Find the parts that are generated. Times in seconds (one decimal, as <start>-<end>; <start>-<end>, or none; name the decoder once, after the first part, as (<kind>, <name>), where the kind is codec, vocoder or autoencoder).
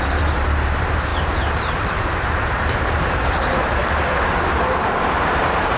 0.0-3.8 (vocoder, BigVGAN v2); 4.3-5.8